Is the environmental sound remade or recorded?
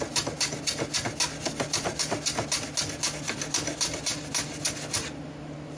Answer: recorded